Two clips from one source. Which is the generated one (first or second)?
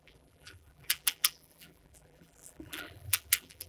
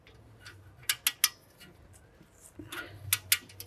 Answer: first